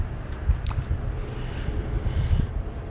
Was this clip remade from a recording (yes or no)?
no